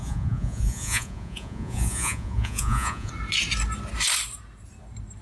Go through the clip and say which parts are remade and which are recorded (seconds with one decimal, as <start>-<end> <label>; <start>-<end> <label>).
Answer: 0.0-3.1 remade; 3.1-5.2 recorded